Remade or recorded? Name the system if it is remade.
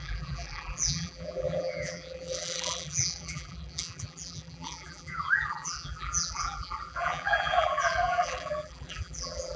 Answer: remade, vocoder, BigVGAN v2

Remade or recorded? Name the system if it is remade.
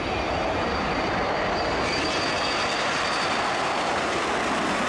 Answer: remade, vocoder, BigVGAN v2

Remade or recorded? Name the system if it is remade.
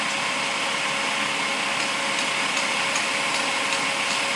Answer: recorded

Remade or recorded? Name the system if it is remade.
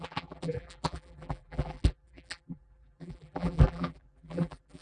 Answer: remade, vocoder, BigVGAN v2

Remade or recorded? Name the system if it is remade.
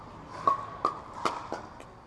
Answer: recorded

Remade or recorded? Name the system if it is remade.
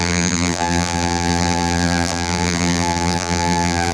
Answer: remade, vocoder, BigVGAN v2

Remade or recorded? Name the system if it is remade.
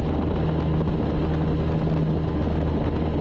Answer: recorded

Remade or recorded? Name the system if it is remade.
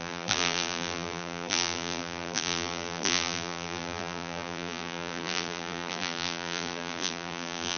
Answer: remade, vocoder, BigVGAN v2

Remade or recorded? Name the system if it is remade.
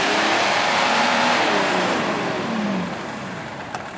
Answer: remade, vocoder, BigVGAN v2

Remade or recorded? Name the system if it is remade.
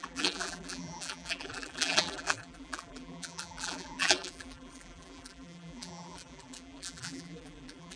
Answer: remade, vocoder, BigVGAN v2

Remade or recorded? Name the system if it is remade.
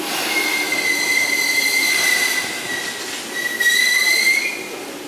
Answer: recorded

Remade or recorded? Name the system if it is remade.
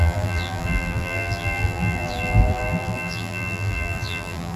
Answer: remade, vocoder, BigVGAN v2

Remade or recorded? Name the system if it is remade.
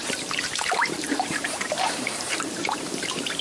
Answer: remade, vocoder, BigVGAN v2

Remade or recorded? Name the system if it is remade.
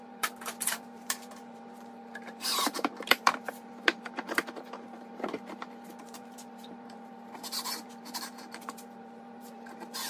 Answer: remade, vocoder, BigVGAN v2